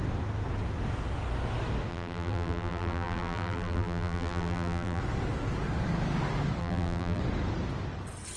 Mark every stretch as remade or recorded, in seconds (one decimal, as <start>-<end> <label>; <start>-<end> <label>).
0.0-1.9 recorded; 1.9-5.0 remade; 5.0-6.6 recorded; 6.6-7.2 remade; 7.2-8.4 recorded